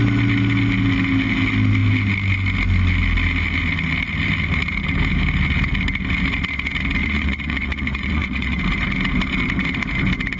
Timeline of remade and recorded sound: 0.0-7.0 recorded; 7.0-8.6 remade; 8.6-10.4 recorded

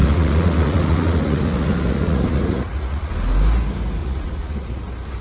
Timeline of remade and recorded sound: 0.0-3.1 remade; 3.1-4.0 recorded; 4.0-4.8 remade; 4.8-5.2 recorded

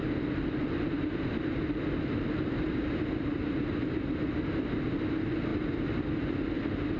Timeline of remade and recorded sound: 0.0-7.0 recorded

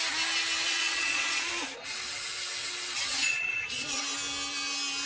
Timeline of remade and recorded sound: 0.0-0.6 recorded; 0.6-1.5 remade; 1.5-3.1 recorded; 3.1-4.0 remade; 4.0-5.1 recorded

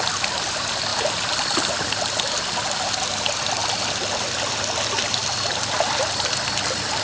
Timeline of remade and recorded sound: 0.0-7.0 recorded

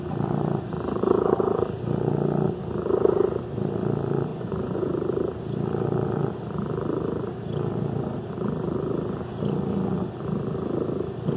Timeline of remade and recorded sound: 0.0-4.3 recorded; 4.3-4.9 remade; 4.9-11.4 recorded